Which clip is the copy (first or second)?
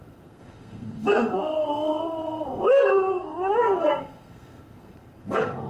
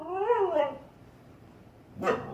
first